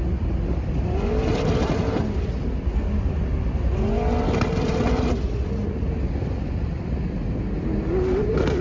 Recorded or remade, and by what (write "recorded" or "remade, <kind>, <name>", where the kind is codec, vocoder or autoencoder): recorded